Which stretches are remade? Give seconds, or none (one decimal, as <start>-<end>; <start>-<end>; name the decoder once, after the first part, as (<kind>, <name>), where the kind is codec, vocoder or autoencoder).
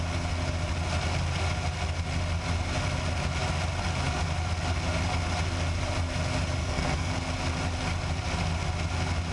6.6-7.1 (codec, SNAC)